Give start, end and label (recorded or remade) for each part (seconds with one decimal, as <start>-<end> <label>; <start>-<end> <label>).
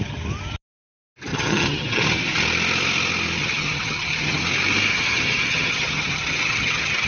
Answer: 0.0-1.3 recorded; 1.3-2.0 remade; 2.0-3.4 recorded; 3.4-4.4 remade; 4.4-4.9 recorded; 4.9-7.1 remade